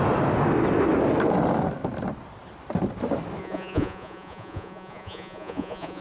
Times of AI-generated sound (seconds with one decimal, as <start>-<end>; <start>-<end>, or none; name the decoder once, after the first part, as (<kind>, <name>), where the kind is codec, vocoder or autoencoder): 3.4-6.0 (vocoder, Vocos)